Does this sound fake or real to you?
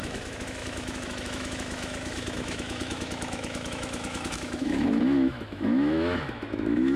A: fake